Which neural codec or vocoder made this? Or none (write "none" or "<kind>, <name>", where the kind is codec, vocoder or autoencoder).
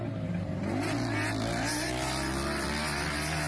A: none